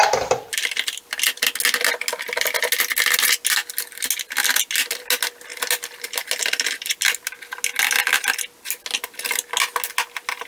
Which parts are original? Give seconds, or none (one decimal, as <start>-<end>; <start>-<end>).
0.0-10.5